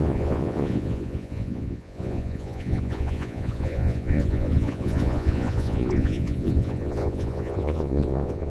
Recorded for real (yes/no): no